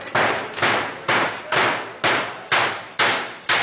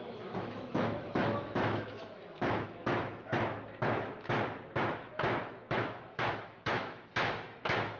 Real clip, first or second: first